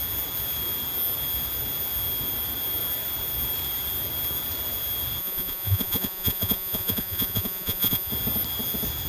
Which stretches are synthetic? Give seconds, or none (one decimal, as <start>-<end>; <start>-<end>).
5.2-8.1